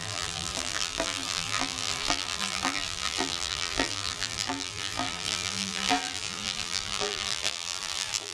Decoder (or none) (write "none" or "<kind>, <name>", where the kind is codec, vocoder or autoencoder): vocoder, BigVGAN v2